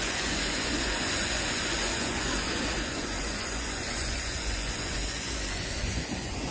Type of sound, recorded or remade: remade